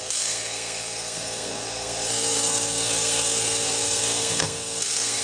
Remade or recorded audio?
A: remade